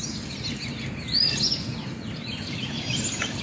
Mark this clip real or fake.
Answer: real